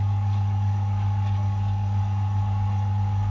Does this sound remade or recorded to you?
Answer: remade